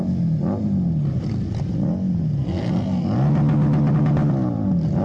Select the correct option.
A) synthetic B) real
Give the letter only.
B